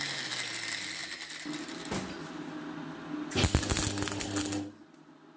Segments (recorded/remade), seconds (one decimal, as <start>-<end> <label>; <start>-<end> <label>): 0.0-5.4 recorded